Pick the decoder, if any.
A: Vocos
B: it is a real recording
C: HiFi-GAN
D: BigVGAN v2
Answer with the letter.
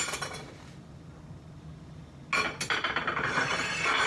B